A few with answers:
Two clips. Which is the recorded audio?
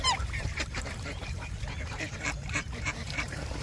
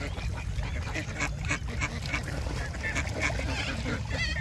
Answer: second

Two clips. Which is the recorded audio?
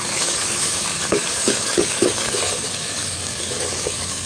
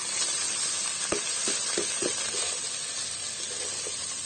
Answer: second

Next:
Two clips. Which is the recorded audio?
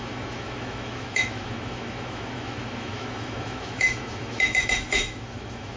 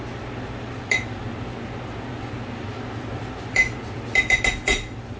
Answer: second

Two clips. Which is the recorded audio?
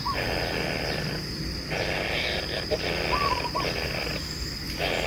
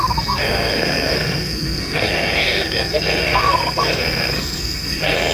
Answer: first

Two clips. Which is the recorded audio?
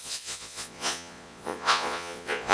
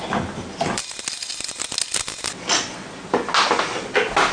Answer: second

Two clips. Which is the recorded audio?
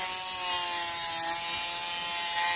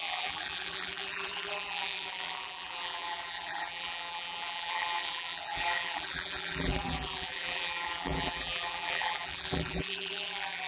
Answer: first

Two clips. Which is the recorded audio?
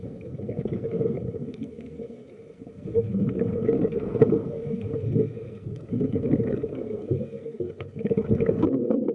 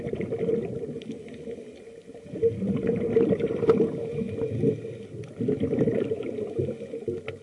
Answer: second